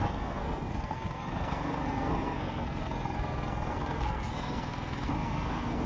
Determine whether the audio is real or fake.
fake